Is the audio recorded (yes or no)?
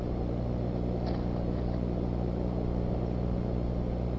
yes